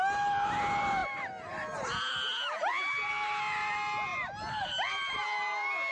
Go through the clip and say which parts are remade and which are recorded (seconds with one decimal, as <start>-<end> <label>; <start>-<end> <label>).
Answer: 0.0-5.9 recorded